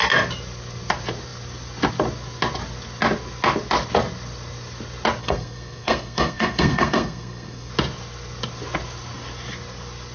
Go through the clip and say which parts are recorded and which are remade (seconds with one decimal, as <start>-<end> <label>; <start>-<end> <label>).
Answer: 0.0-5.2 recorded; 5.2-7.7 remade; 7.7-10.1 recorded